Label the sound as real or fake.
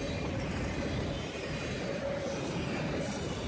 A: real